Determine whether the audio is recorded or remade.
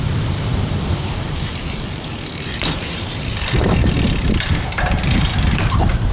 remade